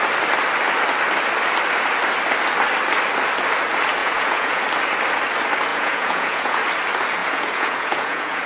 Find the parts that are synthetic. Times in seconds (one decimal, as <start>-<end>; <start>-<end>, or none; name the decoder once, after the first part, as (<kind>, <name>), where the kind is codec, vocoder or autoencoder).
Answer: 4.0-4.6 (vocoder, Vocos); 5.7-6.6; 7.2-8.5